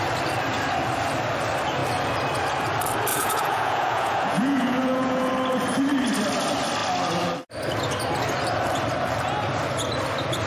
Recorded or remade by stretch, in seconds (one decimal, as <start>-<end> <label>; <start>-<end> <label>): 0.0-3.1 recorded; 3.1-5.3 remade; 5.3-10.5 recorded